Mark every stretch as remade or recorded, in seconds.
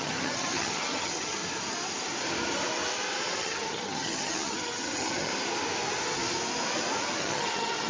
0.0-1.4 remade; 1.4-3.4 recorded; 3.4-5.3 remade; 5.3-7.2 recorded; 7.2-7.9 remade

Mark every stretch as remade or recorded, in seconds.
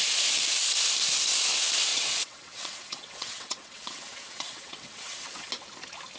0.0-1.9 recorded; 1.9-5.5 remade; 5.5-6.2 recorded